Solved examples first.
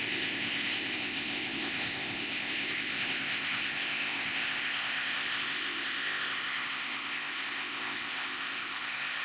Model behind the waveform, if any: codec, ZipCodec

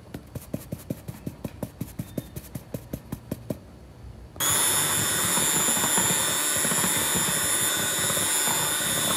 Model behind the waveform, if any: none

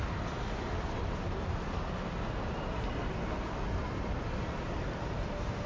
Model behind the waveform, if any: none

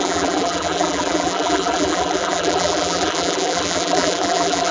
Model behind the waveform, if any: vocoder, BigVGAN v2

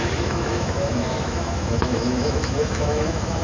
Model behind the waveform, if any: autoencoder, DAC-VAE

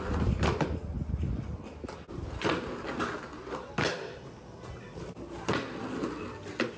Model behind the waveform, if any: none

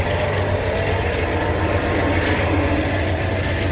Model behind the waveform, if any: none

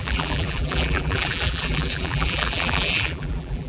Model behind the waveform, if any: vocoder, BigVGAN v2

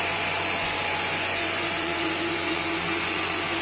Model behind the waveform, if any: vocoder, Vocos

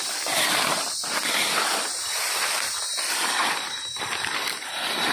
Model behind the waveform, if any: vocoder, BigVGAN v2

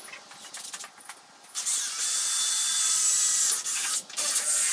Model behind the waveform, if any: none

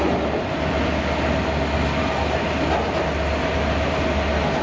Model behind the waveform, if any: none